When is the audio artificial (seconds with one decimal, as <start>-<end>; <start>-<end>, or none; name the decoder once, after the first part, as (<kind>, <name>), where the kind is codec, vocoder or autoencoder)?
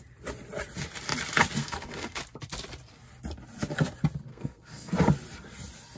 1.6-2.2 (codec, SNAC); 4.3-4.9